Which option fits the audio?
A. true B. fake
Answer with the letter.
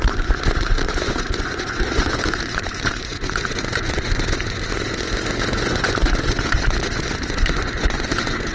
B